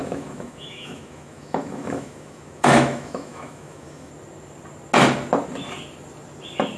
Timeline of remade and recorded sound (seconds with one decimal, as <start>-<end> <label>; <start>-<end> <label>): 0.0-4.1 remade; 4.1-6.8 recorded